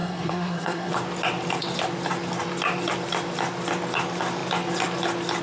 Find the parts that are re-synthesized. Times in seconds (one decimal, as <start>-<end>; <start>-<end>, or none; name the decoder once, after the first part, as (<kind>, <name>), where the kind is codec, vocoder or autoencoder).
0.0-0.9 (codec, SNAC)